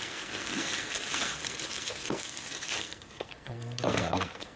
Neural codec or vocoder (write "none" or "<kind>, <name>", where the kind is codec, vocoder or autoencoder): codec, SNAC